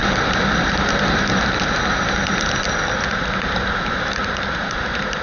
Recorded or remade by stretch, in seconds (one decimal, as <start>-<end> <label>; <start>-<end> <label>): 0.0-3.1 recorded; 3.1-5.2 remade